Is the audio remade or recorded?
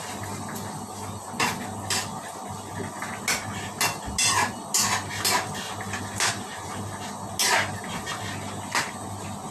recorded